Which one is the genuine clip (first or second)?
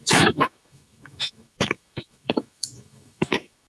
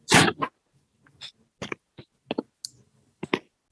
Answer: second